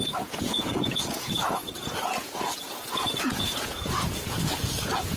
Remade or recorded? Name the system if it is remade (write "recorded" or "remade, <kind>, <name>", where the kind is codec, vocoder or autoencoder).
remade, vocoder, Vocos